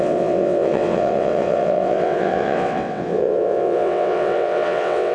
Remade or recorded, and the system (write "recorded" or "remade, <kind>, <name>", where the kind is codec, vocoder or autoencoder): remade, vocoder, WaveNeXt